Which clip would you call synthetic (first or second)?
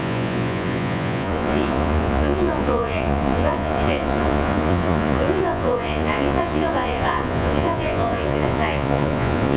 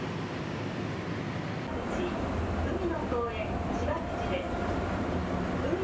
first